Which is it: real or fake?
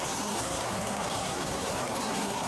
fake